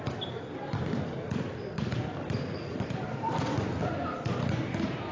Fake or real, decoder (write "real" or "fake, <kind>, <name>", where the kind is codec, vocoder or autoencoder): real